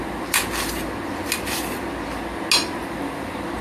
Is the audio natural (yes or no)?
yes